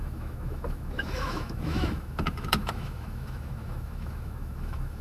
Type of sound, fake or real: fake